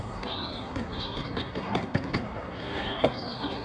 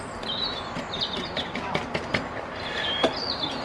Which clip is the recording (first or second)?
second